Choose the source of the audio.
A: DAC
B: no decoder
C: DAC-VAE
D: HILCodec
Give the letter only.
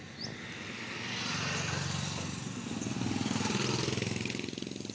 B